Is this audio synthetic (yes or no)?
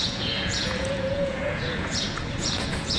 yes